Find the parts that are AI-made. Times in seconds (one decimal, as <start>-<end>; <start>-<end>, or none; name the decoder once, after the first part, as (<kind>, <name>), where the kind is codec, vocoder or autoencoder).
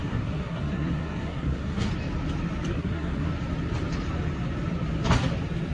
0.0-1.9 (codec, SNAC); 2.7-3.3